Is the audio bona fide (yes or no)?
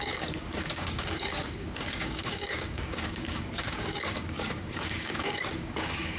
no